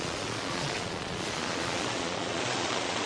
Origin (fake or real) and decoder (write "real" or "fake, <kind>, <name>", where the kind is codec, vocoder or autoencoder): fake, vocoder, Vocos